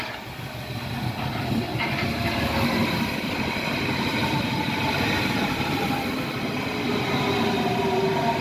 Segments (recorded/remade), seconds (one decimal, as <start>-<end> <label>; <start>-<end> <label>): 0.0-4.1 recorded; 4.1-5.9 remade; 5.9-8.4 recorded